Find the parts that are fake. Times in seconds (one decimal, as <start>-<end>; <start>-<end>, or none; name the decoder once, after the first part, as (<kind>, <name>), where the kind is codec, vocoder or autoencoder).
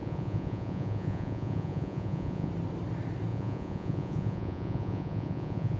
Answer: 0.0-2.5 (vocoder, Vocos); 3.3-5.8